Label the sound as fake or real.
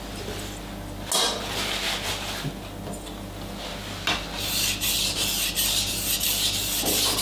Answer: real